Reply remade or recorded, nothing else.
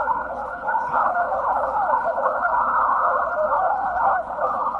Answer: remade